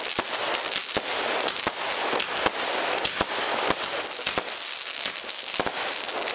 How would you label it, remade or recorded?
recorded